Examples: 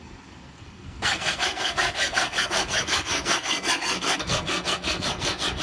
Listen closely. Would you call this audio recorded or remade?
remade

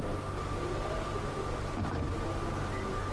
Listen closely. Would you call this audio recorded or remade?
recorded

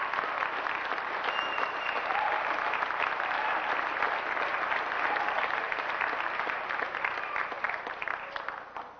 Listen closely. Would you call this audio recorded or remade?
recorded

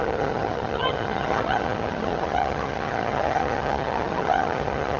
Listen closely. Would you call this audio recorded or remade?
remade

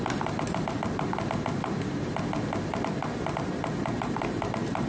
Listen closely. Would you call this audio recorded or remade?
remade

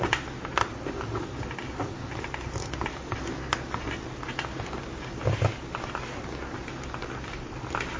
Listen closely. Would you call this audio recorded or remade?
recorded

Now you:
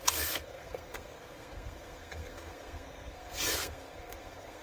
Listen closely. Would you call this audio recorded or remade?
remade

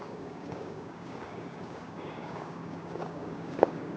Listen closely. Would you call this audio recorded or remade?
remade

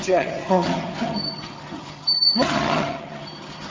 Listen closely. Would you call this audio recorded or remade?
remade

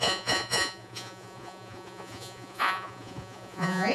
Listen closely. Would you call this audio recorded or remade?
remade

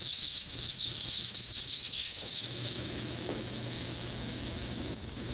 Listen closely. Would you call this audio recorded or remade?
remade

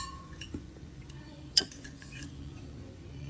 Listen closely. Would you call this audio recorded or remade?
remade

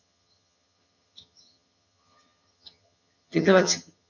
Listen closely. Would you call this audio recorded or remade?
remade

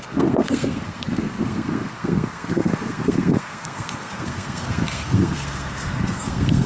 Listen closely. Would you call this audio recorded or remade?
remade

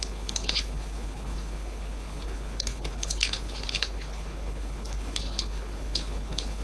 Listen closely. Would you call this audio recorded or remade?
remade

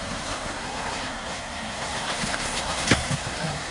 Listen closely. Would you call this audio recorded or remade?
remade